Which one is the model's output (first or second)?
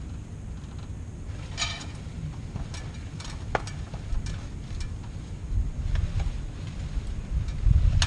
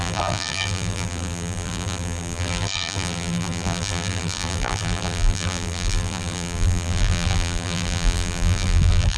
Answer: second